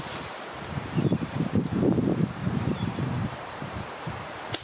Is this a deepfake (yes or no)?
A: yes